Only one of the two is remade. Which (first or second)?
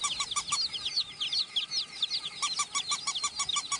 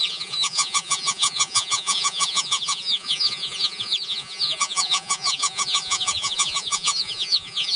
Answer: second